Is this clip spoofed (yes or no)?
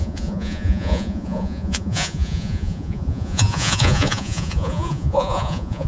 yes